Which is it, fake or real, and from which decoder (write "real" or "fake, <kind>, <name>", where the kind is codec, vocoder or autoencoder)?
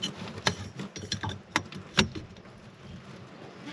real